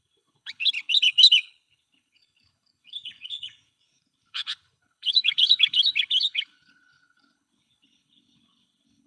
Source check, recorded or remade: remade